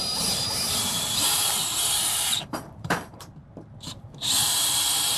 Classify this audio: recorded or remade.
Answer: remade